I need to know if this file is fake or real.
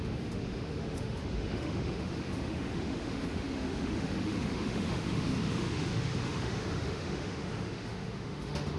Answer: fake